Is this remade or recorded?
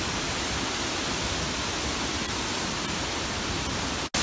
recorded